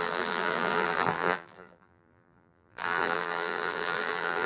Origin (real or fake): fake